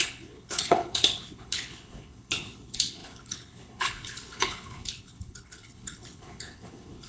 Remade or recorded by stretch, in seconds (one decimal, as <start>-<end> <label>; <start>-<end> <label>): 0.0-7.1 remade

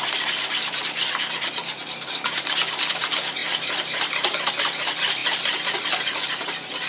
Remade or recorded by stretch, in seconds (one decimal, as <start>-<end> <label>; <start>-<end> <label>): 0.0-6.9 recorded

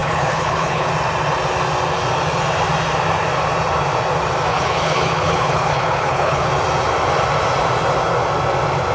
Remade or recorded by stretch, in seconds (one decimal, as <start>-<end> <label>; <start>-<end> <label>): 0.0-0.9 remade; 0.9-4.5 recorded; 4.5-6.5 remade; 6.5-8.9 recorded

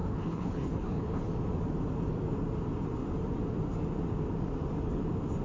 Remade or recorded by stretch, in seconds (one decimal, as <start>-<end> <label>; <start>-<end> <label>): 0.0-1.2 remade; 1.2-5.4 recorded